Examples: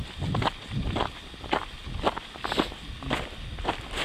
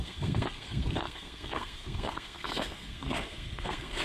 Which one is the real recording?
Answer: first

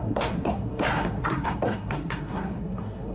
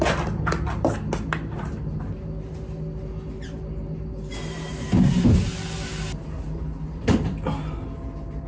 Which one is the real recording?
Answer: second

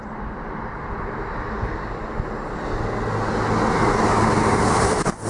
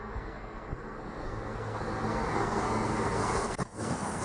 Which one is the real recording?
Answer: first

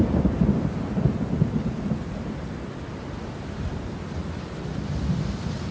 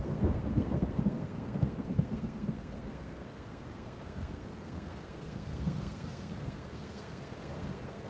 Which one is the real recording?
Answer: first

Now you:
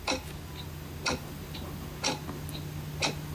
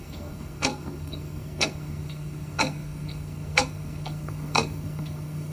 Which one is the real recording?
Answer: first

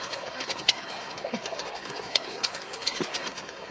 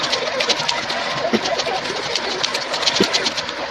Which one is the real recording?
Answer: second